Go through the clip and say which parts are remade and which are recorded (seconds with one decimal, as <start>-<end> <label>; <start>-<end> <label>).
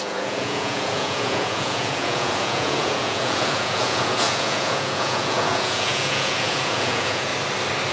0.0-7.3 remade; 7.3-7.9 recorded